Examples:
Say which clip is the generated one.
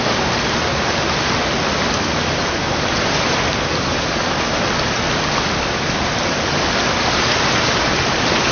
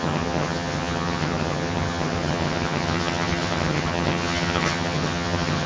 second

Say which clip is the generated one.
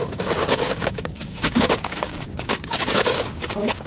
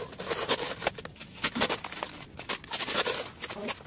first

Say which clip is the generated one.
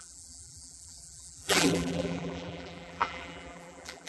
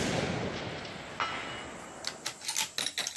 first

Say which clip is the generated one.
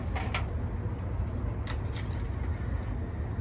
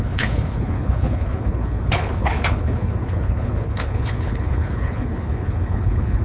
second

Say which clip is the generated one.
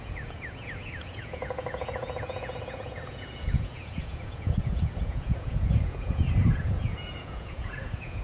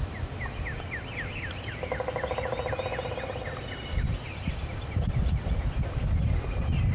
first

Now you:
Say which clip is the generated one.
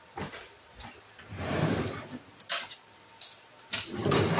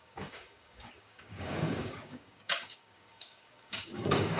second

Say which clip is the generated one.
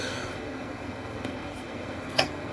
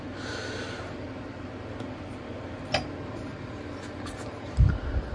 first